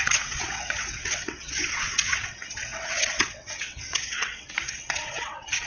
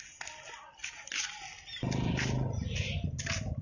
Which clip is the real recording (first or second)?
second